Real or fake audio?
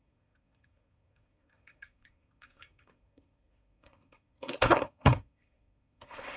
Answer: fake